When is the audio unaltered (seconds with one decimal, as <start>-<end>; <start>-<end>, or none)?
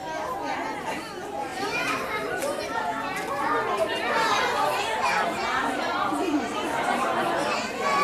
0.0-5.6; 6.5-8.0